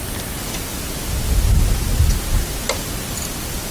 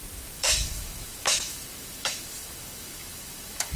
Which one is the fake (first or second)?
second